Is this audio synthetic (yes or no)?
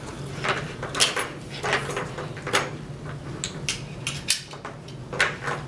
no